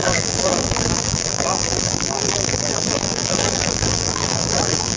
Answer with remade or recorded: remade